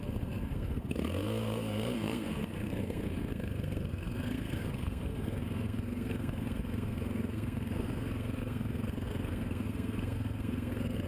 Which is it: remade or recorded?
remade